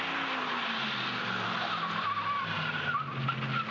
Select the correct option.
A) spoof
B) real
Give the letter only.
B